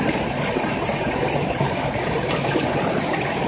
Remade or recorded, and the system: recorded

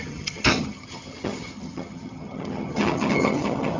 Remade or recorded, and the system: remade, vocoder, HiFi-GAN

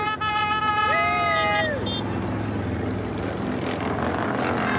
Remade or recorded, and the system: recorded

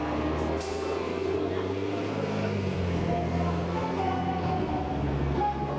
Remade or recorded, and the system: remade, codec, SNAC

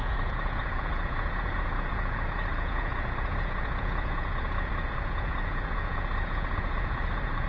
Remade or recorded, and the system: remade, vocoder, Vocos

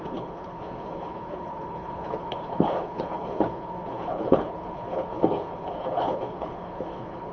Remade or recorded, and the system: remade, codec, HILCodec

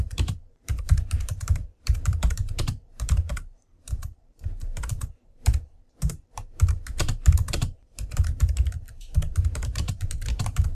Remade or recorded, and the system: remade, vocoder, BigVGAN v2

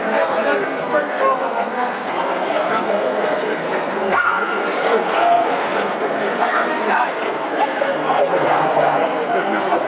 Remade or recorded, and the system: remade, codec, SNAC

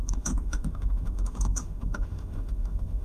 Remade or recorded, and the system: remade, autoencoder, DAC-VAE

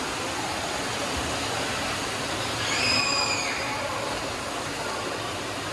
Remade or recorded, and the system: recorded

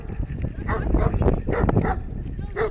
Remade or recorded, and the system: recorded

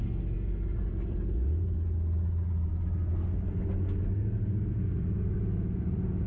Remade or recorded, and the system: recorded